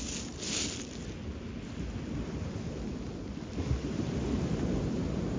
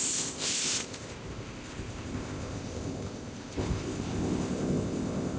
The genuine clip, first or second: first